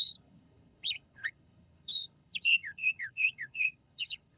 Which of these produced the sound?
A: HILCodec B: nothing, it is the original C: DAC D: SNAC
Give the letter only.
A